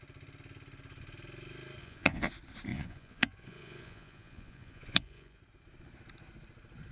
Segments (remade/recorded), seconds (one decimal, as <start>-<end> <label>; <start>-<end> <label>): 0.0-1.8 recorded; 1.8-2.3 remade; 2.3-2.7 recorded; 2.7-5.4 remade; 5.4-6.9 recorded